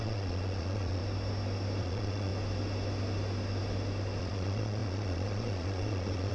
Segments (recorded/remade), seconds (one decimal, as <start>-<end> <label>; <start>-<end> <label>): 0.0-1.0 remade; 1.0-1.8 recorded; 1.8-2.3 remade; 2.3-4.2 recorded; 4.2-6.3 remade